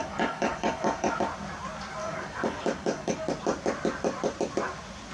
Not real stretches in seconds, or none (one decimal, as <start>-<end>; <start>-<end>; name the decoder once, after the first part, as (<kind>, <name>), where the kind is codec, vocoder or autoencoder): 0.0-1.1 (codec, DAC); 2.0-3.3